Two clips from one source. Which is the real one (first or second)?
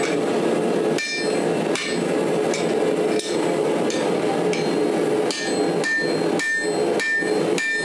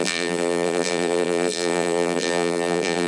first